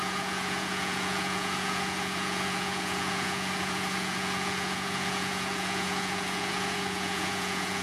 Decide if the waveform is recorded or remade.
remade